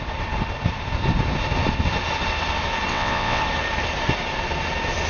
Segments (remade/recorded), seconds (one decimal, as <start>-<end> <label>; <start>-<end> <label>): 0.0-2.9 recorded; 2.9-3.4 remade; 3.4-5.1 recorded